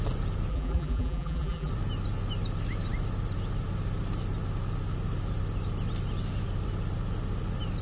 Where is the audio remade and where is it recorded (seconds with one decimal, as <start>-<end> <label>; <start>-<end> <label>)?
0.0-0.5 recorded; 0.5-1.7 remade; 1.7-7.8 recorded